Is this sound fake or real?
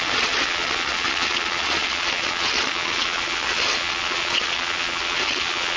fake